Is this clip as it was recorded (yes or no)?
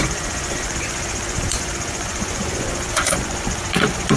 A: no